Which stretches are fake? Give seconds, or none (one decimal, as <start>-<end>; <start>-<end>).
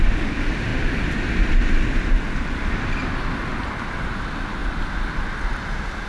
none